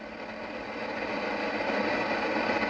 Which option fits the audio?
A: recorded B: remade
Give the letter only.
A